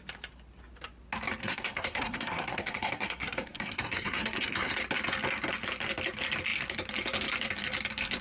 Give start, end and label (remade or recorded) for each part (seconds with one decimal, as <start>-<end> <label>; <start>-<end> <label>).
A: 0.0-1.4 recorded; 1.4-4.7 remade; 4.7-8.2 recorded